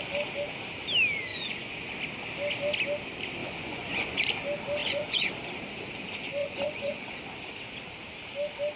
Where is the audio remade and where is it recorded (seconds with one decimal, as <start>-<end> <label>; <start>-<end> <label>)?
0.0-1.3 recorded; 1.3-1.9 remade; 1.9-3.4 recorded; 3.4-4.2 remade; 4.2-4.8 recorded; 4.8-5.3 remade; 5.3-6.4 recorded; 6.4-7.1 remade; 7.1-8.8 recorded